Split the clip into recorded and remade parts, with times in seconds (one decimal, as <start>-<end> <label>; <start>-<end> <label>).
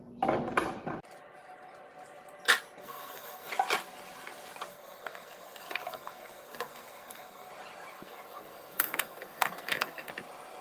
0.0-2.8 recorded; 2.8-3.5 remade; 3.5-4.7 recorded; 4.7-7.5 remade; 7.5-7.9 recorded; 7.9-10.1 remade; 10.1-10.6 recorded